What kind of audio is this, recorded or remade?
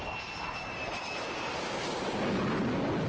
recorded